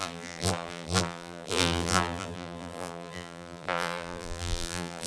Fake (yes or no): yes